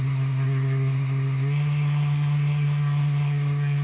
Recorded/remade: remade